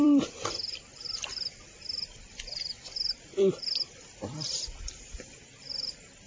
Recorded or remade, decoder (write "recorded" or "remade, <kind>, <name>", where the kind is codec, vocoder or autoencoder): remade, vocoder, BigVGAN v2